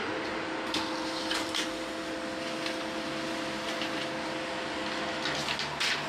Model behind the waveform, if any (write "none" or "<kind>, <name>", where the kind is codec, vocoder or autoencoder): none